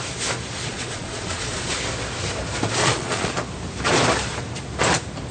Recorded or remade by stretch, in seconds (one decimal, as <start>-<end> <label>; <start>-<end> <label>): 0.0-0.7 recorded; 0.7-1.7 remade; 1.7-2.8 recorded; 2.8-3.3 remade; 3.3-5.3 recorded